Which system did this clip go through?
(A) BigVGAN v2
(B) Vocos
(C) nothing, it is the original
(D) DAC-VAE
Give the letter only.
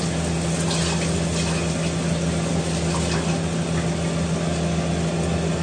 C